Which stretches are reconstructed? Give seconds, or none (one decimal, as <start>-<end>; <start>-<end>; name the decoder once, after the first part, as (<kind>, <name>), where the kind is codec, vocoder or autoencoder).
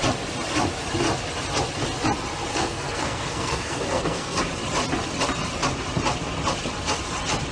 2.5-4.4 (codec, SNAC)